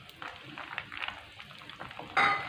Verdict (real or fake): real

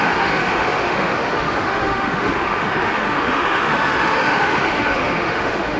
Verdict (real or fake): fake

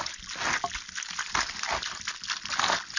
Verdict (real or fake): real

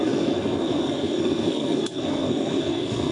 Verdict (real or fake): fake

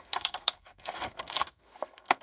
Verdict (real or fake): fake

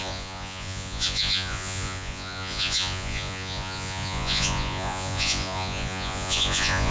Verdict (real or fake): fake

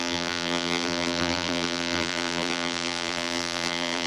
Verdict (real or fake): fake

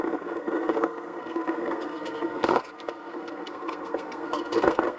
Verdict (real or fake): fake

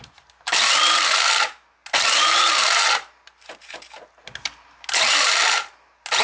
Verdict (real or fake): real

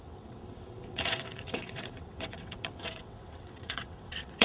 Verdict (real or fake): fake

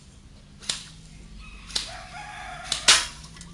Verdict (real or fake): real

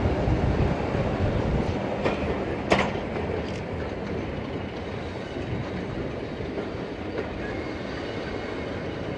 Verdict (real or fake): real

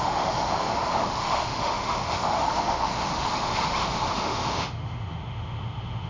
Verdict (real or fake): fake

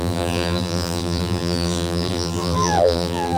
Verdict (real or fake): fake